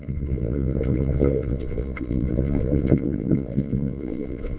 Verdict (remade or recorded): remade